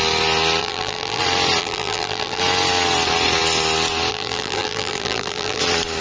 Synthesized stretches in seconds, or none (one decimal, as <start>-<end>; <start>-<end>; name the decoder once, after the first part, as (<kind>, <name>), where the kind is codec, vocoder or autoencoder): 0.6-1.2 (vocoder, BigVGAN v2); 1.6-2.4; 4.1-5.6